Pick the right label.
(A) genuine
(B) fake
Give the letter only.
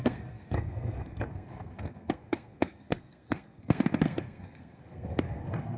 B